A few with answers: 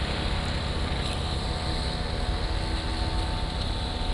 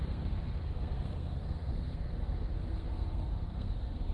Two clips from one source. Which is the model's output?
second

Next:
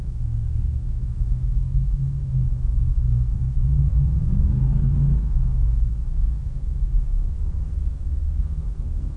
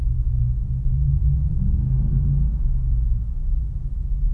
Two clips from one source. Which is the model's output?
first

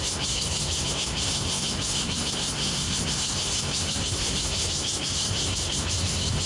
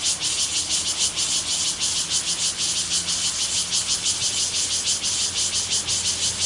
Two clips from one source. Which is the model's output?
first